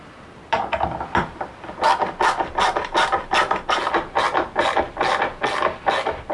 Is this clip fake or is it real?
fake